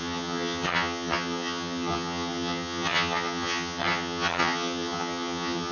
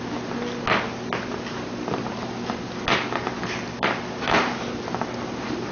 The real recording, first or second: second